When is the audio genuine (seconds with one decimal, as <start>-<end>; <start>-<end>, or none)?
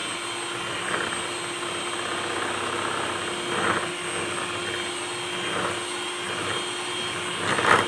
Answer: 0.0-7.9